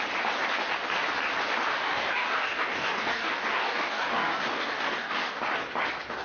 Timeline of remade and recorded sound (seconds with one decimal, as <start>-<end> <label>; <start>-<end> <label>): 0.0-1.7 recorded; 1.7-5.4 remade; 5.4-6.2 recorded